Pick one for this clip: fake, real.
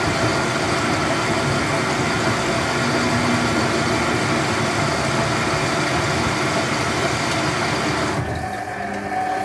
real